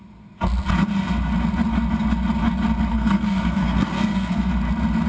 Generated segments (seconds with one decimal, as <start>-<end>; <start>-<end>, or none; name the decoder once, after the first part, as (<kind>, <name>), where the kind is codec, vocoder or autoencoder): 2.9-4.5 (codec, SNAC)